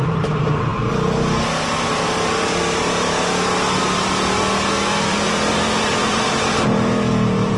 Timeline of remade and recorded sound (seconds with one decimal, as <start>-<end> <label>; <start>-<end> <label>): 0.0-5.1 recorded; 5.1-7.6 remade